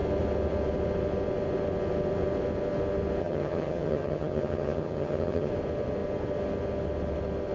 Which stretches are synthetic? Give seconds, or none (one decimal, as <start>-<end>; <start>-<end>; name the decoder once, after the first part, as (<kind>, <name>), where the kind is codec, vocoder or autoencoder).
3.2-5.5 (vocoder, HiFi-GAN)